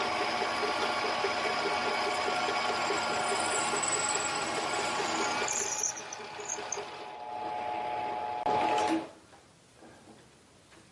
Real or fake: real